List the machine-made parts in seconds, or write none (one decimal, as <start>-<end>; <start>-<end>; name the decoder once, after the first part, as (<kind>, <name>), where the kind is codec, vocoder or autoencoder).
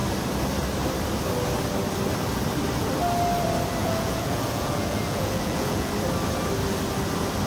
3.8-5.9 (vocoder, Vocos)